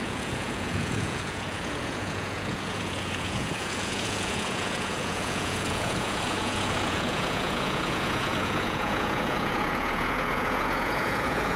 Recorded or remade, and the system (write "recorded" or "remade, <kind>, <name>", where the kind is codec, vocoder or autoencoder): remade, vocoder, Vocos